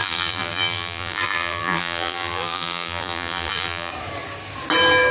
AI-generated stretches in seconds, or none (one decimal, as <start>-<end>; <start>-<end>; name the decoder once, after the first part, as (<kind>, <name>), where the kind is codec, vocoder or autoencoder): 0.0-3.9 (vocoder, BigVGAN v2)